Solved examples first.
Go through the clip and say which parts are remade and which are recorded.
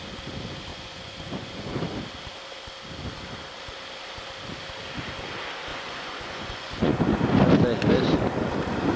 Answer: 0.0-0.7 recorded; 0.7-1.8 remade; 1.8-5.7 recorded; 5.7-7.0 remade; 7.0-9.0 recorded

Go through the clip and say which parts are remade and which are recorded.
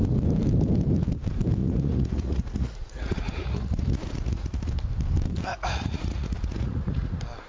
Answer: 0.0-1.6 recorded; 1.6-4.7 remade; 4.7-5.5 recorded; 5.5-7.1 remade; 7.1-7.5 recorded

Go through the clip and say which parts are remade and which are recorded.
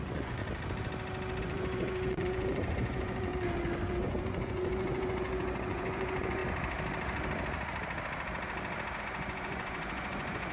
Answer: 0.0-0.4 remade; 0.4-1.4 recorded; 1.4-3.3 remade; 3.3-3.9 recorded; 3.9-6.4 remade; 6.4-9.0 recorded; 9.0-10.5 remade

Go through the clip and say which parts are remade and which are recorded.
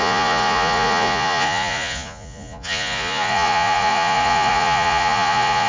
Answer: 0.0-5.7 remade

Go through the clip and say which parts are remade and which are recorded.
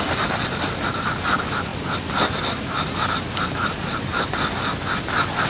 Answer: 0.0-5.5 recorded